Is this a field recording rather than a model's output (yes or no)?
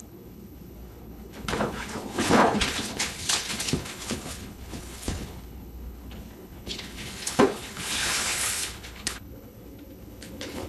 no